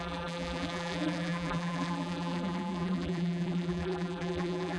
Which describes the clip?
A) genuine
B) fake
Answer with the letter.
B